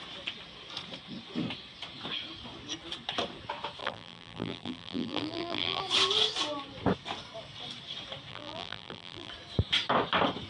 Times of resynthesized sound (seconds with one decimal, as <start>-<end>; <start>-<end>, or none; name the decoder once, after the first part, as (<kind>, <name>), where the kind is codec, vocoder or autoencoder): 3.8-5.8 (vocoder, BigVGAN v2); 8.3-9.3